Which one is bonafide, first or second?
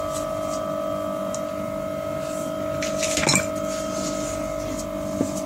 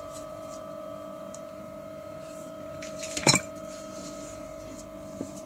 first